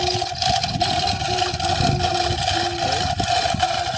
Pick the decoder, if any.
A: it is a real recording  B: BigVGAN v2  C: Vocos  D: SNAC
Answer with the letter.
A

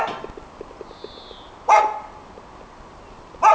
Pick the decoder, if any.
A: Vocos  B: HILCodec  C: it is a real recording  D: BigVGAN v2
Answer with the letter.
C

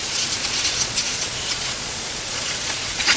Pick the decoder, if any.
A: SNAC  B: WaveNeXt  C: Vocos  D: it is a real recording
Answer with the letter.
C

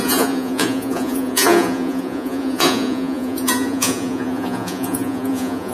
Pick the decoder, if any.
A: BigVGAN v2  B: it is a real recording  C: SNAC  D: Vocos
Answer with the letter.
D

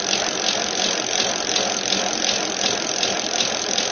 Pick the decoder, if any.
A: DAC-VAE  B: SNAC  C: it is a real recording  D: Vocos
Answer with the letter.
C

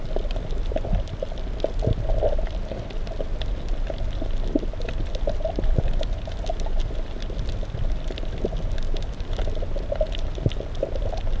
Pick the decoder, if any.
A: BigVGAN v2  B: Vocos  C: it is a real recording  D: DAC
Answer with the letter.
C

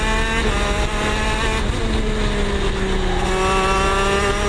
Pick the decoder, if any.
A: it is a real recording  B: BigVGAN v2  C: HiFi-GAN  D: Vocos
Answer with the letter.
A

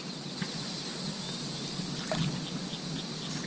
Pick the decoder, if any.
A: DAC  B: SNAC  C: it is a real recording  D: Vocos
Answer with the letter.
C